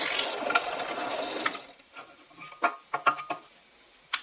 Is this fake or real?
real